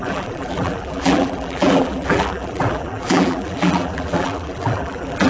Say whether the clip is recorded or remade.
remade